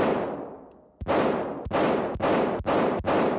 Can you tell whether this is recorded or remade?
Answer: recorded